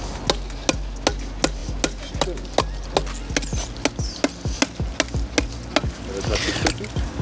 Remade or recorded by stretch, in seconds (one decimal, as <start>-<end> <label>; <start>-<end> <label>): 0.0-7.2 recorded